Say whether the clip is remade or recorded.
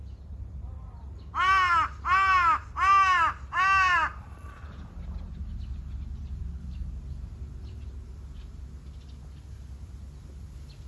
recorded